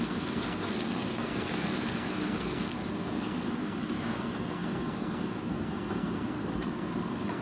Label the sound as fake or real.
fake